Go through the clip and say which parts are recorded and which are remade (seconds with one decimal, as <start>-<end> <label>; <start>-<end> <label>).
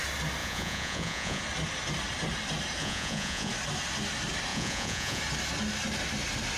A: 0.0-0.4 recorded; 0.4-1.4 remade; 1.4-2.8 recorded; 2.8-3.5 remade; 3.5-4.5 recorded; 4.5-5.2 remade; 5.2-6.6 recorded